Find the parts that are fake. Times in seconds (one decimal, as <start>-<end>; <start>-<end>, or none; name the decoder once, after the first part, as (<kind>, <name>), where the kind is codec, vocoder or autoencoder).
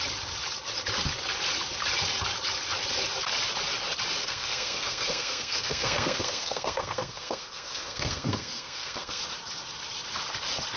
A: 4.2-9.2 (codec, SNAC)